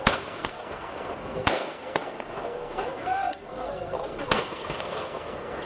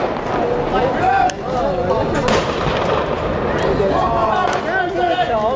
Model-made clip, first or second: first